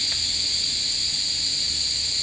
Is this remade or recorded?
recorded